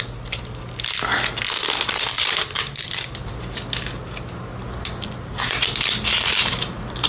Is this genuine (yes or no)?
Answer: yes